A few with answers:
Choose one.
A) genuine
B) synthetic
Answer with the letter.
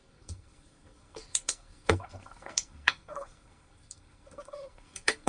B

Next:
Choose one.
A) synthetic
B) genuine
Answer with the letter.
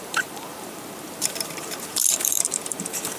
A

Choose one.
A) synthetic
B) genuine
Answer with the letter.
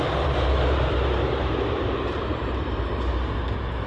A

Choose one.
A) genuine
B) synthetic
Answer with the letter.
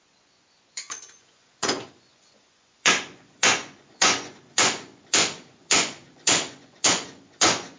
B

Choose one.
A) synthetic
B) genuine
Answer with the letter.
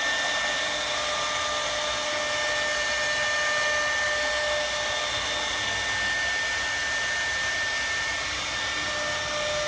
B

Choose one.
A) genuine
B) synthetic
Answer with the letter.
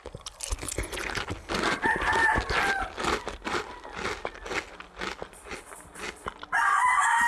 A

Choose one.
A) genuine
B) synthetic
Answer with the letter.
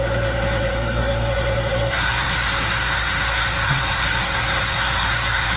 B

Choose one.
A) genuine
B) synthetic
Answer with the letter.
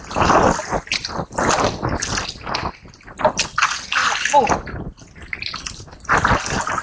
A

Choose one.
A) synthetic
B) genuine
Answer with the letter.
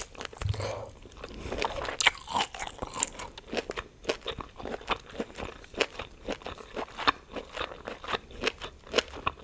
B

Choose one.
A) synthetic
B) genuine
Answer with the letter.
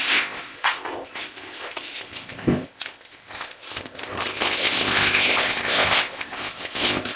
A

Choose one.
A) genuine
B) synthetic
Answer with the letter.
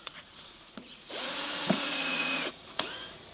B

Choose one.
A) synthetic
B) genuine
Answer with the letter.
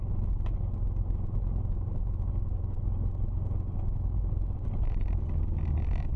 B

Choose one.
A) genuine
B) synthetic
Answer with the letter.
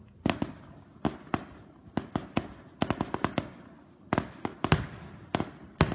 A